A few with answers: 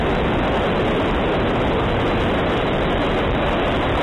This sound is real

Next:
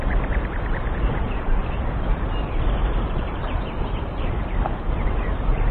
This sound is fake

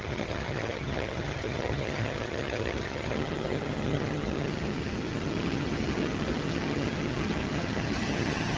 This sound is fake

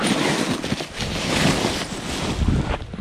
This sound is real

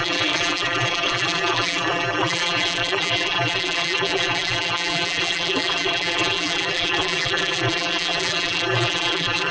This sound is fake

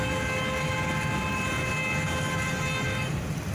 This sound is real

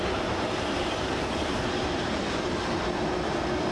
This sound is real